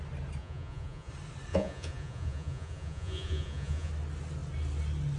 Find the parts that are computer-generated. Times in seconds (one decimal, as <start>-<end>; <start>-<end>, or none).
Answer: 0.4-1.1; 1.5-3.9